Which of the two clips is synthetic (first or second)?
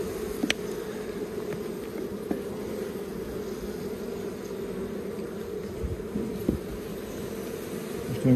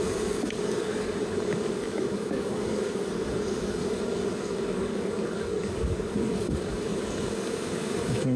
second